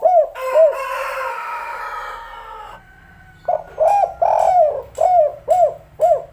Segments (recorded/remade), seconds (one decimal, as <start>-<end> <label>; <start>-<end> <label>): 0.0-1.3 recorded; 1.3-1.8 remade; 1.8-6.3 recorded